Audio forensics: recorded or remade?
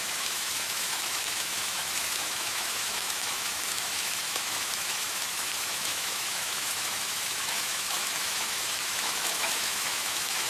remade